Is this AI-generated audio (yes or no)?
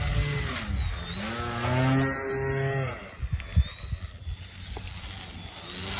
no